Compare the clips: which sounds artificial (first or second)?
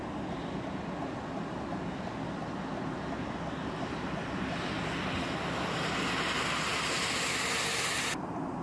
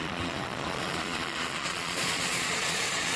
second